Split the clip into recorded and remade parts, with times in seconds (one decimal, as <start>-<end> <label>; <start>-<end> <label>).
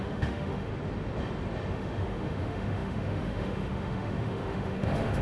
0.0-0.7 remade; 0.7-1.7 recorded; 1.7-5.2 remade